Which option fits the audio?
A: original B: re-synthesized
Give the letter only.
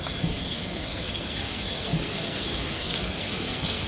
B